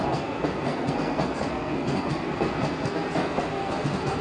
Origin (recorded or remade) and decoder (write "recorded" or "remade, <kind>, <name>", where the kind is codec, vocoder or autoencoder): remade, codec, SNAC